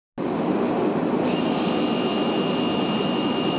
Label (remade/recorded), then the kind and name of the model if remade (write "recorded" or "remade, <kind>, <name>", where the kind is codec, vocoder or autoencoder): recorded